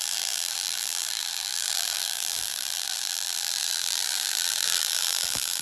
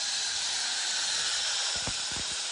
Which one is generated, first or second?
first